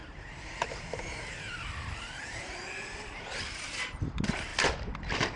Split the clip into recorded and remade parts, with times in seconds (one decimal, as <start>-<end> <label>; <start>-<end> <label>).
0.0-3.1 remade; 3.1-5.4 recorded